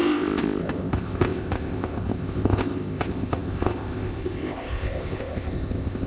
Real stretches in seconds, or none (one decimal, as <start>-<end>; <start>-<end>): none